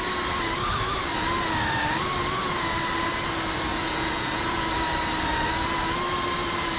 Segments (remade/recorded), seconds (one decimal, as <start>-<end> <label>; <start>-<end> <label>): 0.0-3.7 recorded; 3.7-4.6 remade; 4.6-6.8 recorded